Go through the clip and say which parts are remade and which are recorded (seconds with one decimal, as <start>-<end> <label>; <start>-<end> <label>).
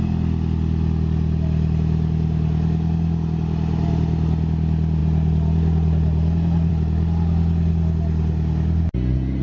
0.0-9.4 recorded